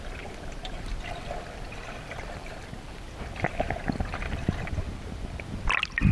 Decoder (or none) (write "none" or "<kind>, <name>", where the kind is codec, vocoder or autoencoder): vocoder, BigVGAN v2